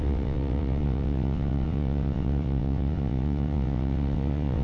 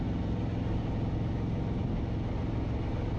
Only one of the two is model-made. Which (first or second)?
first